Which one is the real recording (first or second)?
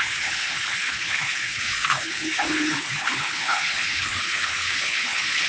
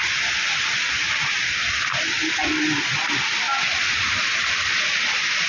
second